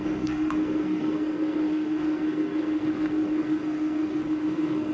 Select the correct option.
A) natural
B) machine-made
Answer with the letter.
B